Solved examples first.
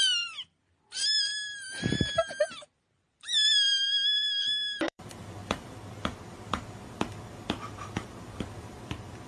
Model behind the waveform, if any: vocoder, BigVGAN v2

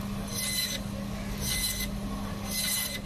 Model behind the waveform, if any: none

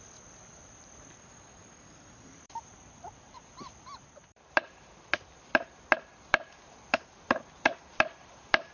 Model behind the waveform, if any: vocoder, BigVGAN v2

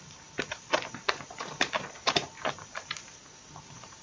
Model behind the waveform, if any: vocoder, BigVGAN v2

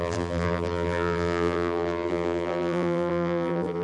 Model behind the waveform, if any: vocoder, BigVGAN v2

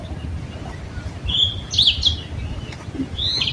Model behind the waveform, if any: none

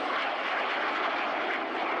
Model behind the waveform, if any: none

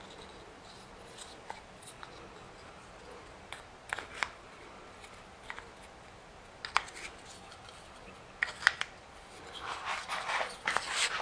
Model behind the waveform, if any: none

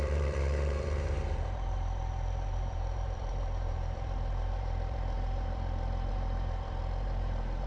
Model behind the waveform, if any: vocoder, BigVGAN v2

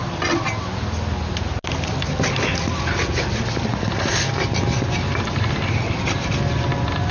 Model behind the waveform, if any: none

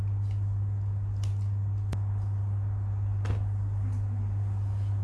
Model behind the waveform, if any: none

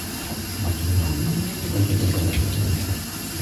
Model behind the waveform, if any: none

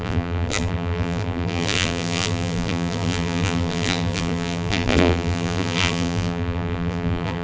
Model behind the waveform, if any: vocoder, BigVGAN v2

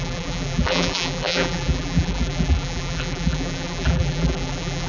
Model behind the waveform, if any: vocoder, BigVGAN v2